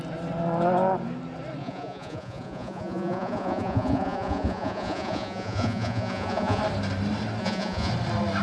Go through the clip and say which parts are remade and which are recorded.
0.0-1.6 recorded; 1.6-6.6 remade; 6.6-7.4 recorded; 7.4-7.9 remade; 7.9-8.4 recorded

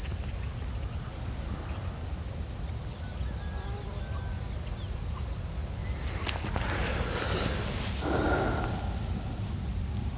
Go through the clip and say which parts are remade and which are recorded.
0.0-10.2 recorded

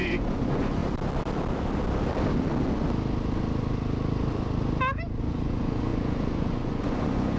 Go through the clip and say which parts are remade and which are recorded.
0.0-0.8 remade; 0.8-5.2 recorded; 5.2-7.4 remade

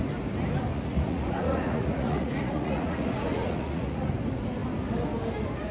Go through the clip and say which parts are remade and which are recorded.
0.0-0.7 recorded; 0.7-4.1 remade; 4.1-5.7 recorded

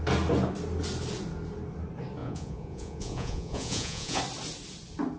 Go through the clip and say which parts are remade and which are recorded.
0.0-2.2 recorded; 2.2-4.2 remade; 4.2-5.2 recorded

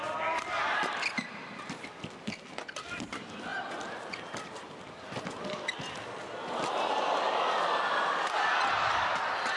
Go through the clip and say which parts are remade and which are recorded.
0.0-9.6 recorded